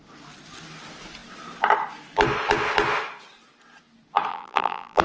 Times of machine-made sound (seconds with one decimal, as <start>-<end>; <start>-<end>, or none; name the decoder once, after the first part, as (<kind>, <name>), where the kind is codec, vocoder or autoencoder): 4.3-5.0 (vocoder, BigVGAN v2)